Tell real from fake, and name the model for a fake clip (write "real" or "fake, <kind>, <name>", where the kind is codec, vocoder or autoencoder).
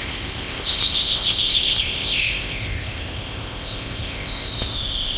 fake, codec, ZipCodec